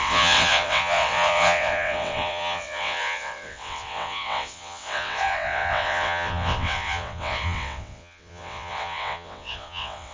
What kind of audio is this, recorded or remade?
remade